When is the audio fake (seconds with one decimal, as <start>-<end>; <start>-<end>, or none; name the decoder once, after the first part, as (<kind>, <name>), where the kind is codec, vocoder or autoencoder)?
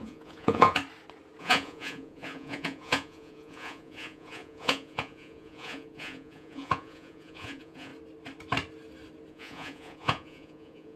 0.0-0.8 (vocoder, Vocos); 1.4-7.9; 9.3-11.0